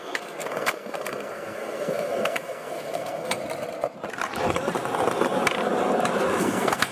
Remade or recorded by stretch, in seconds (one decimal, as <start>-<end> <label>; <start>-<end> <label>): 0.0-3.4 remade; 3.4-6.4 recorded; 6.4-6.9 remade